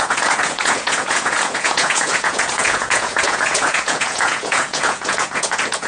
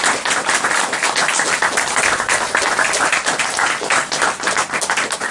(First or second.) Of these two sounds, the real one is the second